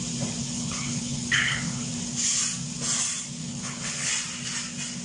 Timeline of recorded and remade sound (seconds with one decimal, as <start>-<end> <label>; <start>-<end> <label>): 0.0-0.4 recorded; 0.4-1.9 remade; 1.9-3.4 recorded; 3.4-4.1 remade; 4.1-5.0 recorded